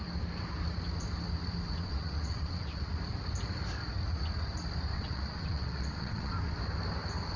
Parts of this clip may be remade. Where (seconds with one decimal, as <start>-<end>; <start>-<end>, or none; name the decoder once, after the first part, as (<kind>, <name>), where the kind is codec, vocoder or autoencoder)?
1.8-2.9 (vocoder, WaveNeXt); 4.9-6.3